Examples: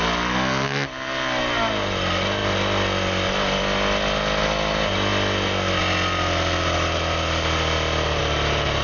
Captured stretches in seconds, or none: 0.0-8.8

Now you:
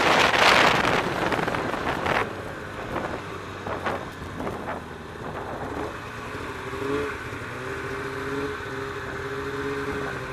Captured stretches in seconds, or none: 0.0-2.2; 3.9-10.3

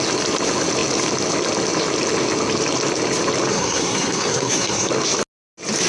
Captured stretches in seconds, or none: 0.0-3.5; 4.9-5.9

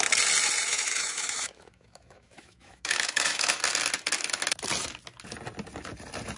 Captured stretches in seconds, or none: 0.0-0.7; 3.6-6.4

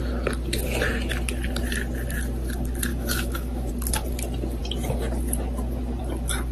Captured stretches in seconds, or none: 0.0-2.9; 3.7-6.5